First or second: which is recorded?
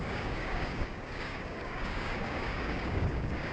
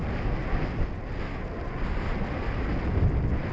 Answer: second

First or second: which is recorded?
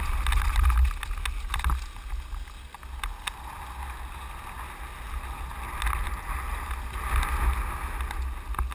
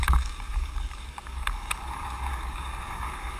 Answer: first